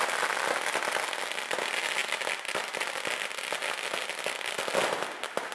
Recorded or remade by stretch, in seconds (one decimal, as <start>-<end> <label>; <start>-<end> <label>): 0.0-5.5 recorded